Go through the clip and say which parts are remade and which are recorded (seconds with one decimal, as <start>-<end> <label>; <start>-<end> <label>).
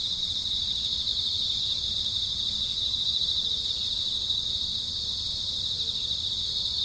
0.0-6.8 recorded